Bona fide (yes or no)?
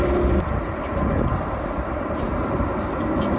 yes